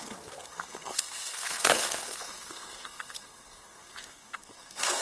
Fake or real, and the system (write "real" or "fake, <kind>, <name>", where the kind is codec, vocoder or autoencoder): fake, codec, SNAC